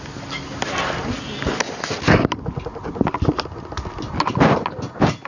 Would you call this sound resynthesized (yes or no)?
no